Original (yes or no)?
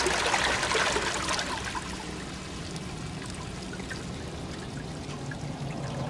yes